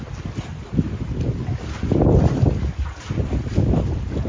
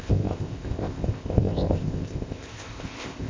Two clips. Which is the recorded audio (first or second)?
first